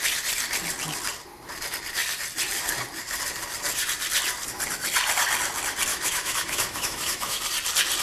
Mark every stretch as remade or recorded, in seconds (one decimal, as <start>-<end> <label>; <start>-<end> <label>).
0.0-5.9 recorded; 5.9-7.4 remade; 7.4-8.0 recorded